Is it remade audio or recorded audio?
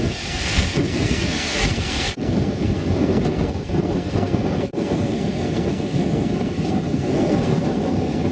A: remade